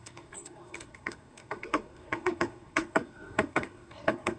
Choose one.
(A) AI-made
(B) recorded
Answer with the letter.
A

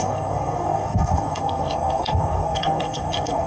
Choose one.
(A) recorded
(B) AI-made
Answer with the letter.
B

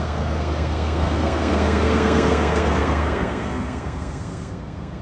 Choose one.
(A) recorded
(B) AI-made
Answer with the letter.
B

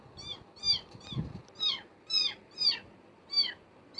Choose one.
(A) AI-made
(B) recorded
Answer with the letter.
B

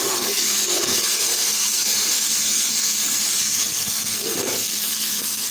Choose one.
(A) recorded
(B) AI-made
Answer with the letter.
B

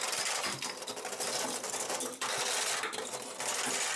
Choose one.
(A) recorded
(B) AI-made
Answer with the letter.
A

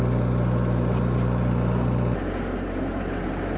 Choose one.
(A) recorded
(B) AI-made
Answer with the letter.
A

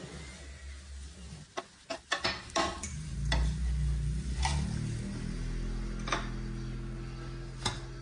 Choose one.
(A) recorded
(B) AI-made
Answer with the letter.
A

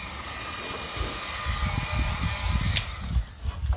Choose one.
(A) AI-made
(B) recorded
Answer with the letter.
B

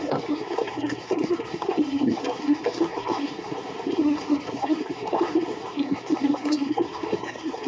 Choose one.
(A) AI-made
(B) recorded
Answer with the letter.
A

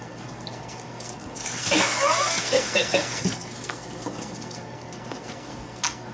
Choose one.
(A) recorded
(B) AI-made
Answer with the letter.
B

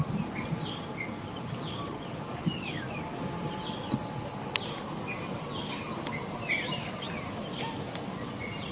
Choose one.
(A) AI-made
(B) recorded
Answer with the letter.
B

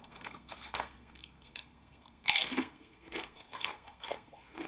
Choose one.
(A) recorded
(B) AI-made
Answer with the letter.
B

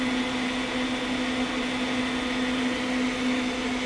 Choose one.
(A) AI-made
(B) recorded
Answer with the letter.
B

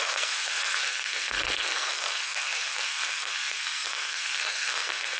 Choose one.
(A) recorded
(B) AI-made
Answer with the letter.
B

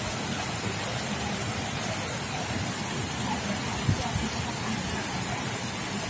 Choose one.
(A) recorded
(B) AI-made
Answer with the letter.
A